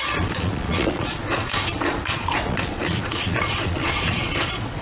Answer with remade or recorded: remade